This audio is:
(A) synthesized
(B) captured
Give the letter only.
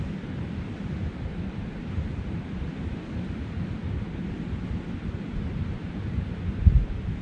B